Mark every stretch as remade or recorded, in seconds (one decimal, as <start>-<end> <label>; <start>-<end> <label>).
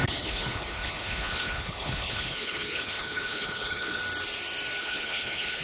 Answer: 0.0-4.0 remade; 4.0-4.8 recorded; 4.8-5.6 remade